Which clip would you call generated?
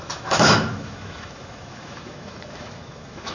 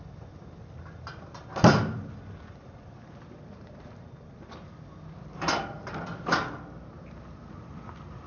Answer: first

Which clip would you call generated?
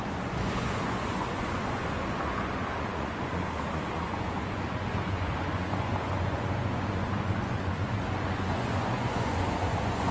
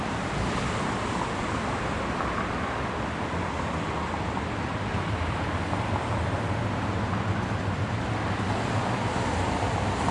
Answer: first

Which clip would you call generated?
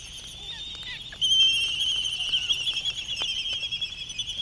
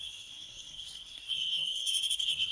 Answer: second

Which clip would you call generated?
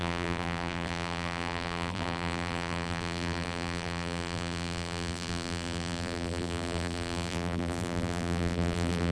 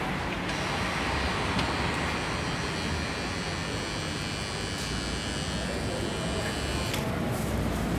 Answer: first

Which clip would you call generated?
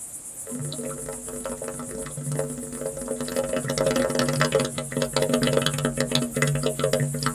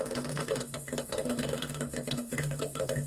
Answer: second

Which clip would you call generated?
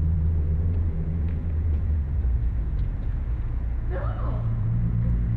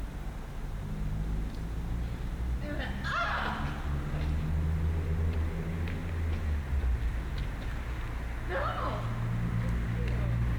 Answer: first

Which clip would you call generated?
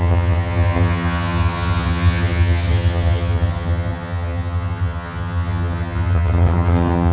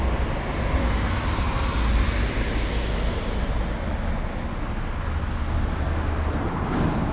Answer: first